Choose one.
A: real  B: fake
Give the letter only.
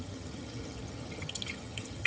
B